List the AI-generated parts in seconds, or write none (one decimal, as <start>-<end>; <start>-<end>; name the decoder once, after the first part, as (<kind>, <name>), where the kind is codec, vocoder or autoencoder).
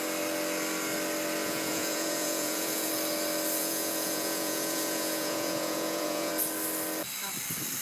1.4-2.9 (vocoder, Vocos); 3.6-6.3